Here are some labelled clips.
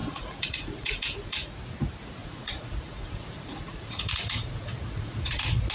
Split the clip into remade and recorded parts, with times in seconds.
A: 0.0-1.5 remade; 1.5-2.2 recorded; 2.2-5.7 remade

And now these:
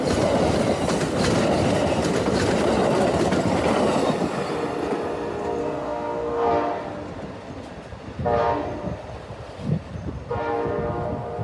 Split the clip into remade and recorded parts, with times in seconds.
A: 0.0-5.6 recorded; 5.6-6.5 remade; 6.5-11.4 recorded

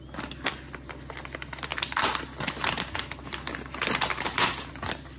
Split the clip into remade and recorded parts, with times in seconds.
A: 0.0-5.2 recorded